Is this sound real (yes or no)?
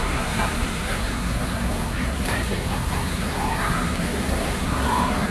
no